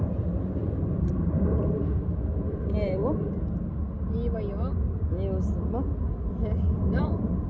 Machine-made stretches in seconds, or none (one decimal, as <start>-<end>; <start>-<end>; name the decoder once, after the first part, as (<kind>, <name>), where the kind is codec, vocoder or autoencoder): 0.0-1.8 (vocoder, BigVGAN v2); 2.5-3.0; 7.0-7.5